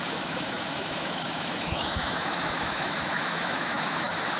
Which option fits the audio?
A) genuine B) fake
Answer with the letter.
B